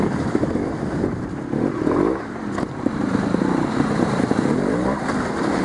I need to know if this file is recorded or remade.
remade